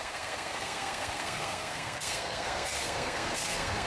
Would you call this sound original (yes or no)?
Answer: no